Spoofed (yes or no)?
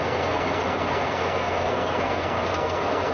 yes